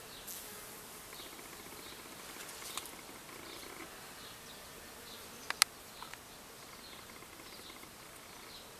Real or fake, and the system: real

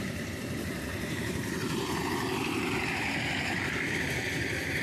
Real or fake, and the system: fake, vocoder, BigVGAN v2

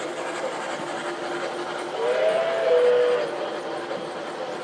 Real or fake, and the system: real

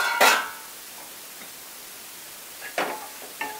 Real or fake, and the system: real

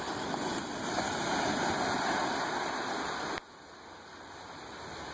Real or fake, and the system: real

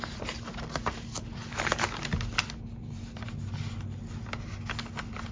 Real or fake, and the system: real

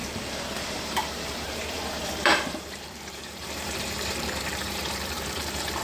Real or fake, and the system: fake, vocoder, BigVGAN v2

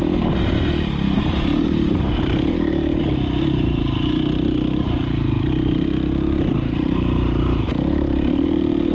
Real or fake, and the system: fake, vocoder, BigVGAN v2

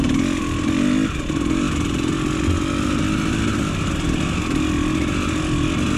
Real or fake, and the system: real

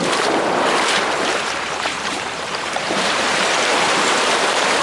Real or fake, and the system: fake, vocoder, BigVGAN v2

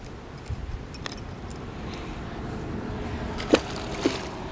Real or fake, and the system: real